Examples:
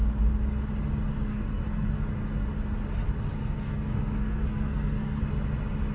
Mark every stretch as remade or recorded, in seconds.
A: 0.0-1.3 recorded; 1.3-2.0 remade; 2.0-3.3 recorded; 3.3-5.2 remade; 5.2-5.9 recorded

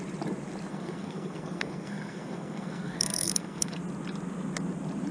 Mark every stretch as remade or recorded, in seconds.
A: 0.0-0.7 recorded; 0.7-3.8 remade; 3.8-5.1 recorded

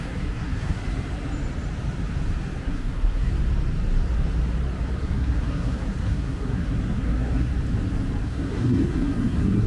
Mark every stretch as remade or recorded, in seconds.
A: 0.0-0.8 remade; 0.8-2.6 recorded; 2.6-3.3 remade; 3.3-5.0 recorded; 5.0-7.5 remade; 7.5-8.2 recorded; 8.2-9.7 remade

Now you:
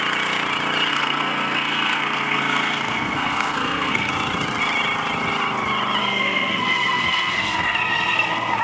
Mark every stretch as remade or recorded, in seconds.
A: 0.0-0.9 recorded; 0.9-4.1 remade; 4.1-6.0 recorded; 6.0-8.6 remade

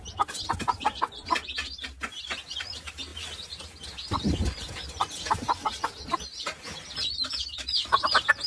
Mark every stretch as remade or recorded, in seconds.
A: 0.0-8.5 recorded

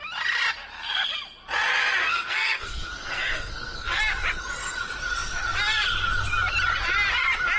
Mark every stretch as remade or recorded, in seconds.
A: 0.0-2.0 recorded; 2.0-4.0 remade; 4.0-7.6 recorded